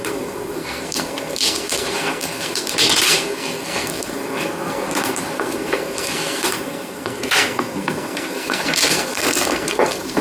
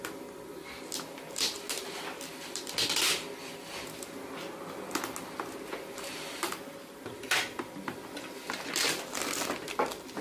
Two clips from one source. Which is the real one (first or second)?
second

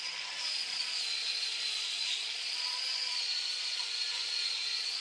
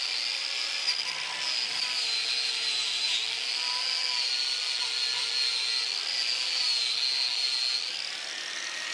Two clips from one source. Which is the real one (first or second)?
second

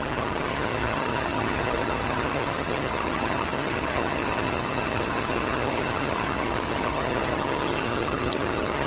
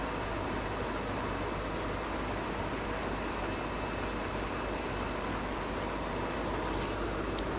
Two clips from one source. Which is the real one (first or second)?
second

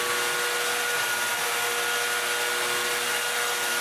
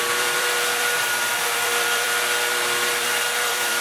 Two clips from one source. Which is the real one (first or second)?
first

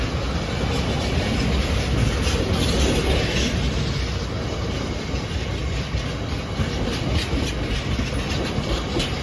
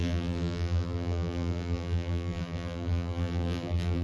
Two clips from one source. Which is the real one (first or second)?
first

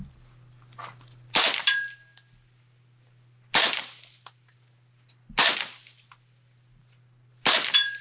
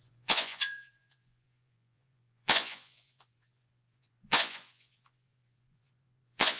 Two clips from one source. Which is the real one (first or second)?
first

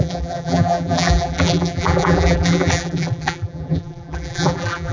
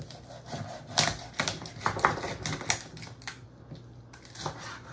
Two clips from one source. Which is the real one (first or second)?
second